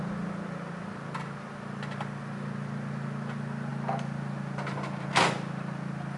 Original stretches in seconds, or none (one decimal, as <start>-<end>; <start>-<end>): 0.0-6.2